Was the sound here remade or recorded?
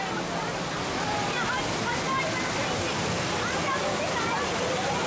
recorded